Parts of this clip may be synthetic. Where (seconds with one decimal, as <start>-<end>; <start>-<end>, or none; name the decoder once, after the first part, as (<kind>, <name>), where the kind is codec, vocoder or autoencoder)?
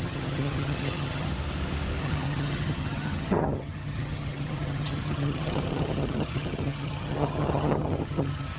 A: 0.0-1.3 (vocoder, HiFi-GAN); 2.0-8.6